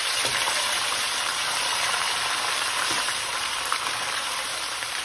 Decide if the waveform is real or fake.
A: fake